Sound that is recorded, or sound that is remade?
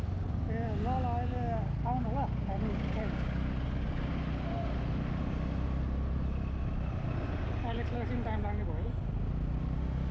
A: recorded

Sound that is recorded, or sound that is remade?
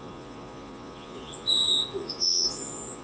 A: remade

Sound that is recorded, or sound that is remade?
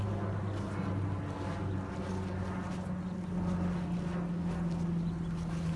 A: recorded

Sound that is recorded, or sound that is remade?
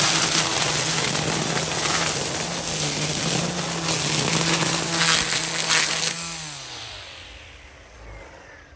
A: recorded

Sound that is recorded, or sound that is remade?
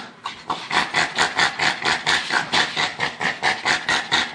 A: recorded